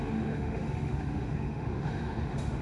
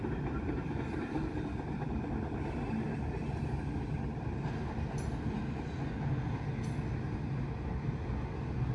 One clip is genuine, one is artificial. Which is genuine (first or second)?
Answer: second